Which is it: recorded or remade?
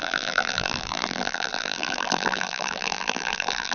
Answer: remade